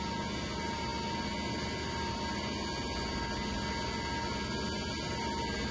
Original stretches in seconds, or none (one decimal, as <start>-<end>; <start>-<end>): 0.0-5.7